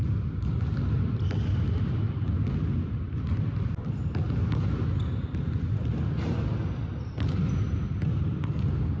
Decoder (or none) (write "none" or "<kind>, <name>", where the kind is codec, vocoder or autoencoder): none